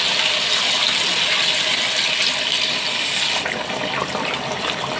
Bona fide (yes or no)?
yes